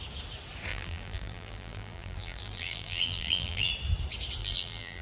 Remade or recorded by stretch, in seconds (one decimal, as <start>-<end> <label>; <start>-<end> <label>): 0.0-0.7 recorded; 0.7-3.7 remade; 3.7-4.4 recorded; 4.4-5.0 remade